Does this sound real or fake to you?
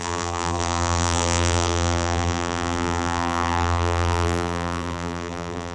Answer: fake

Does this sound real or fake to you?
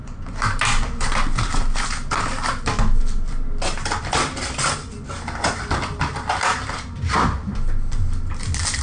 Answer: real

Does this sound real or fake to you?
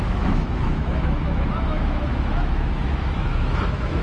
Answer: fake